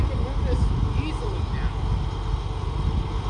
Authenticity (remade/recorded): recorded